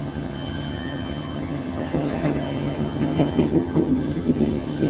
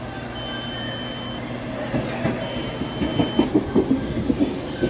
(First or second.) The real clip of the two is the second